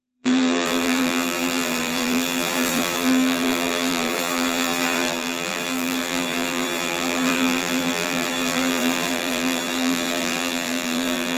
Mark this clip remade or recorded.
remade